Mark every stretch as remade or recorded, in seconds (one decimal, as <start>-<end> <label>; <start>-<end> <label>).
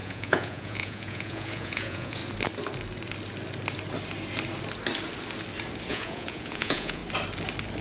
0.0-2.2 remade; 2.2-5.9 recorded; 5.9-7.0 remade; 7.0-7.8 recorded